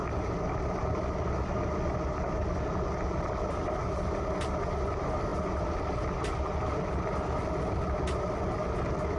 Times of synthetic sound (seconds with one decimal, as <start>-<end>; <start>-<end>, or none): none